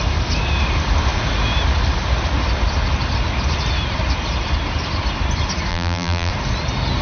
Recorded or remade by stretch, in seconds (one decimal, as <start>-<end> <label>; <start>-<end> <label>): 0.0-5.7 recorded; 5.7-6.3 remade; 6.3-7.0 recorded